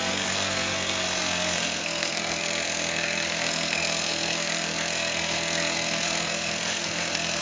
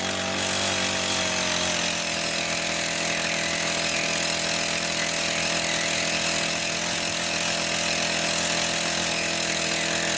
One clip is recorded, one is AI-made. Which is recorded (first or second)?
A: second